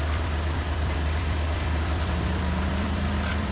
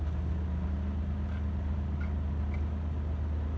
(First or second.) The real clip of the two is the second